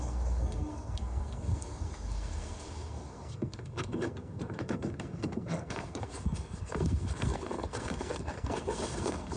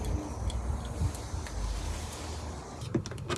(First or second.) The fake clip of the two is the first